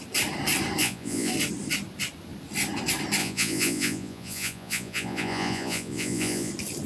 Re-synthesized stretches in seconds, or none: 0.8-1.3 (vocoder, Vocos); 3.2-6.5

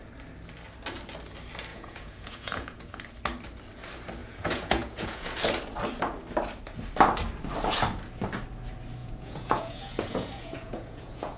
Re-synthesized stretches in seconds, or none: 1.7-2.9 (vocoder, Vocos); 4.2-5.4; 9.0-11.4